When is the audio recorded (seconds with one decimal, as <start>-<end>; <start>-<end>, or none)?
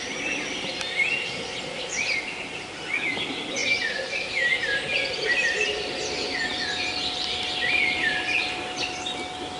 0.0-3.6; 4.2-9.6